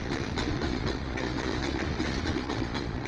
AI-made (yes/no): yes